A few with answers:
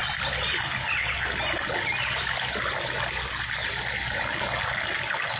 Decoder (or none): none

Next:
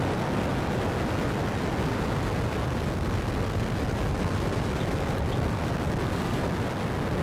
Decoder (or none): none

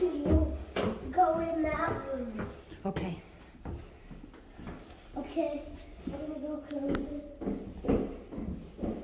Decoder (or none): none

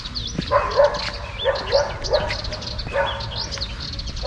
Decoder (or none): none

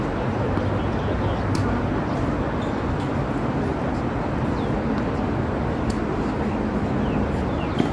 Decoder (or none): none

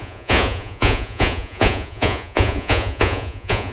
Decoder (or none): vocoder, Vocos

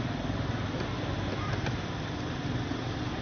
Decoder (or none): none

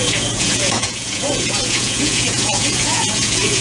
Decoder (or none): vocoder, Vocos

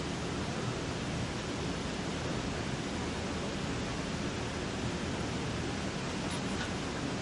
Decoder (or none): none